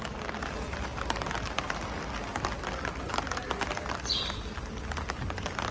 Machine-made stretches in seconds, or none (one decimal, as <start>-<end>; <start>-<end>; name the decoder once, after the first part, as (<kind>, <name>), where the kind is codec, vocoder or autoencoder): none